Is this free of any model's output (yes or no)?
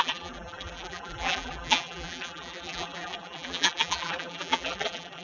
no